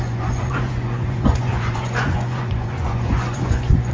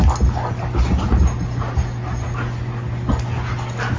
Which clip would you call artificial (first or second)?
first